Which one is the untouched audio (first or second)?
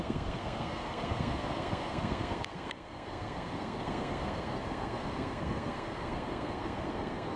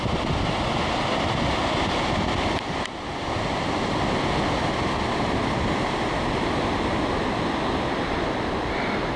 second